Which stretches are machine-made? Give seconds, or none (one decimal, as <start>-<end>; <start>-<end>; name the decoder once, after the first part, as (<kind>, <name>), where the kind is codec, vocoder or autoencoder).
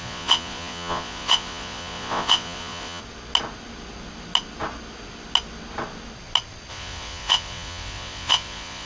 0.0-3.0 (vocoder, Vocos); 6.7-8.8